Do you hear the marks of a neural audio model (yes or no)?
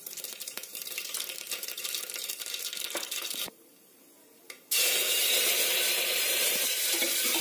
yes